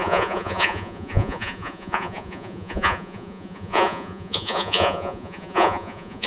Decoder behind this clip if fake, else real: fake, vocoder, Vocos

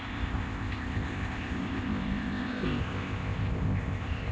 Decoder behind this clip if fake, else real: fake, codec, ZipCodec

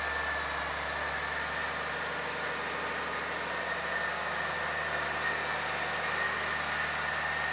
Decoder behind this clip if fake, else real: real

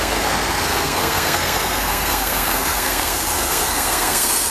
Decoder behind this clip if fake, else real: fake, codec, SNAC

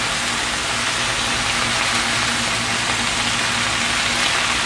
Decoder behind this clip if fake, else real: real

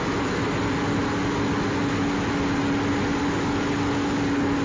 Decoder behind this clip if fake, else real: real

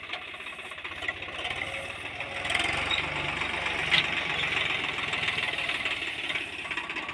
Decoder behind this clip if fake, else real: real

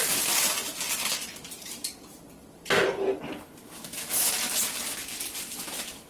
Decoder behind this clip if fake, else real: real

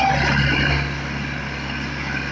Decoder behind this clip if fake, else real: real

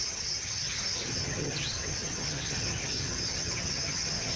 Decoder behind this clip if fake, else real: fake, vocoder, HiFi-GAN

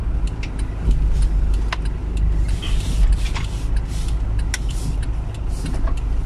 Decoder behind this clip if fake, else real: real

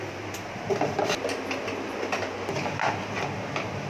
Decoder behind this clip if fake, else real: real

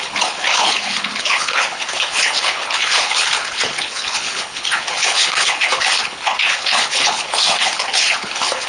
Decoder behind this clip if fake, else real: fake, codec, HILCodec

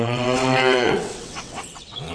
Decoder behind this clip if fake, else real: fake, vocoder, WaveNeXt